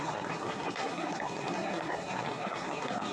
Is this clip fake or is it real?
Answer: fake